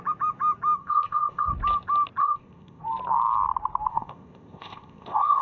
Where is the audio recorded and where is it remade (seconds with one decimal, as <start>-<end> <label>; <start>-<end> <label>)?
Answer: 0.0-0.8 recorded; 0.8-1.5 remade; 1.5-2.2 recorded; 2.2-2.8 remade; 2.8-3.9 recorded; 3.9-5.4 remade